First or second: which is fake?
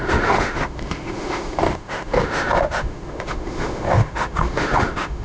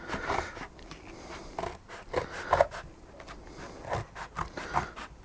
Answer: first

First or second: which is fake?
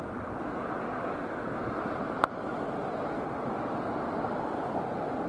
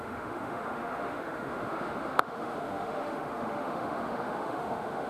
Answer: second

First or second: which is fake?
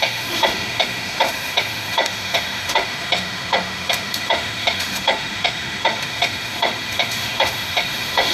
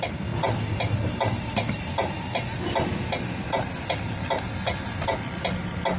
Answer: first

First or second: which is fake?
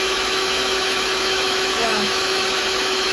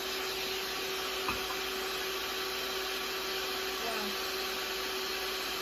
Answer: first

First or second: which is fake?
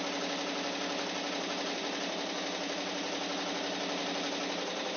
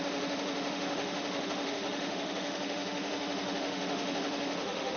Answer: second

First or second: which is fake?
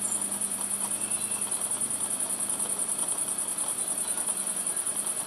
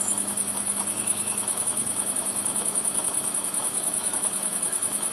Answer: second